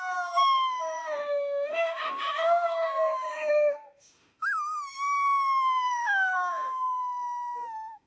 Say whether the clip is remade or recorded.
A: remade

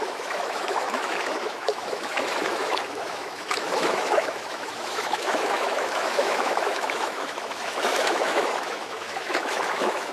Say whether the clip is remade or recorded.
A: remade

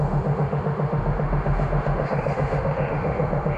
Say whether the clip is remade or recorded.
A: remade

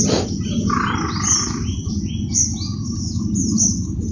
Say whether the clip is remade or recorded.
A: recorded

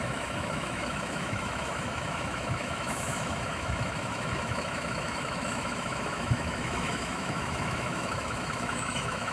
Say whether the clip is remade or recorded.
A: remade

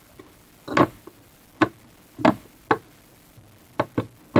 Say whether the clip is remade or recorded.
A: recorded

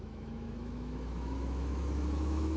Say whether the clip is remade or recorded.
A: remade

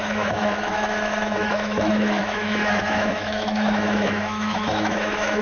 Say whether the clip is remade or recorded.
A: remade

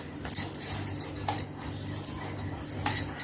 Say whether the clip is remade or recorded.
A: recorded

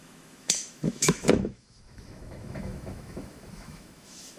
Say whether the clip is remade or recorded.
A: remade